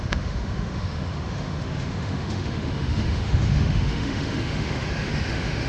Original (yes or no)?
no